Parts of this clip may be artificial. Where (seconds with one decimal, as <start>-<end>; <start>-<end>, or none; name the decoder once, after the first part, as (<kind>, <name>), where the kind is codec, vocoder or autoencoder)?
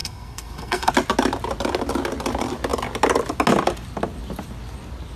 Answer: 0.0-0.9 (codec, SNAC)